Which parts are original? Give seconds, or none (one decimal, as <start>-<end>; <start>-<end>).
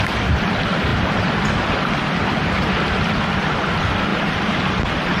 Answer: 0.0-4.1